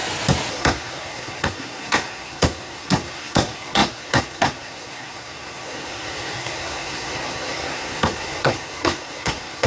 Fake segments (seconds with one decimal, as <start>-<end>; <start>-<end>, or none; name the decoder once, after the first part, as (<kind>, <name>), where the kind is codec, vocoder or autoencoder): 0.5-9.7 (codec, SNAC)